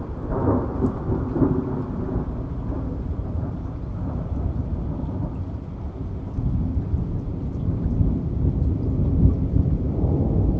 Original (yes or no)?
yes